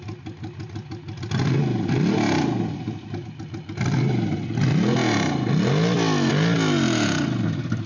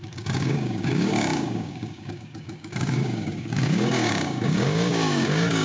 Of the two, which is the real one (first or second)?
first